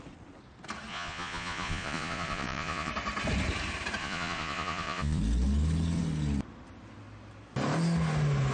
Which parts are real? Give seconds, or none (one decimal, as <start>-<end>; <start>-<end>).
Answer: 0.0-0.9; 2.9-4.0; 5.2-8.5